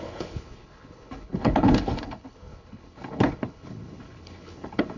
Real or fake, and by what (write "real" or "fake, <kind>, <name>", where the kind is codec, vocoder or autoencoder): fake, codec, HILCodec